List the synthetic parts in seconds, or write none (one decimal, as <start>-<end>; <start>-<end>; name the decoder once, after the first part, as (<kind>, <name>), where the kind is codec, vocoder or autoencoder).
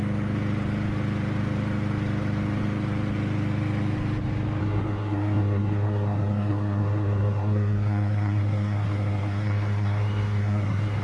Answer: 4.6-11.0 (codec, SNAC)